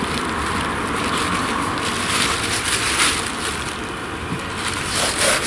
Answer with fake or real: real